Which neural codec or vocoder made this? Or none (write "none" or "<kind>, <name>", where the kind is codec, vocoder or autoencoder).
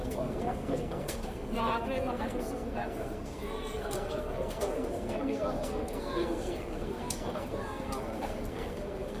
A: codec, SNAC